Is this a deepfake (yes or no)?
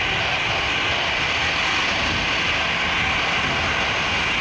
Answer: no